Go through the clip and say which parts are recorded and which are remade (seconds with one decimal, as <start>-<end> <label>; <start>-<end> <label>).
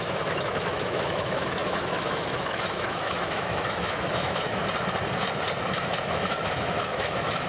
0.0-4.6 remade; 4.6-5.7 recorded; 5.7-7.5 remade